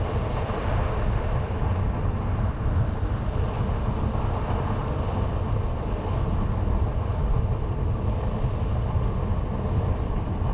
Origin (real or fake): real